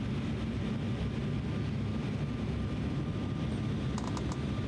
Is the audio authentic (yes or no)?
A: yes